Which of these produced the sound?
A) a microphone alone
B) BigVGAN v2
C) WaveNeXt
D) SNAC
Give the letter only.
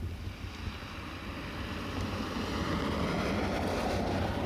A